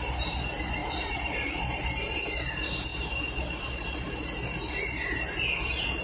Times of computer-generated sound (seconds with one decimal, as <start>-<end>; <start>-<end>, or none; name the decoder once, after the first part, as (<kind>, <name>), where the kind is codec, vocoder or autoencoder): 0.8-1.8 (vocoder, BigVGAN v2)